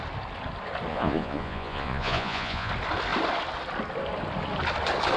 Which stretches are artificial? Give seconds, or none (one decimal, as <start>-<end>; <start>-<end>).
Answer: 0.9-2.7